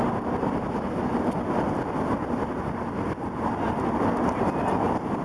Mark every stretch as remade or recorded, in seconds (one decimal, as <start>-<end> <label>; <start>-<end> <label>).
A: 0.0-5.2 recorded